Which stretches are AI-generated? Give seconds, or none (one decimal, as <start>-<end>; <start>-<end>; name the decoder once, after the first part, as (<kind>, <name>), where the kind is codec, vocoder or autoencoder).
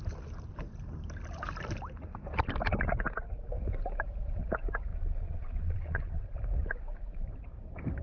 4.9-6.2 (vocoder, Vocos)